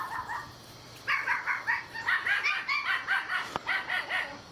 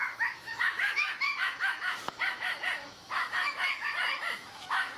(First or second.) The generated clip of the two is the second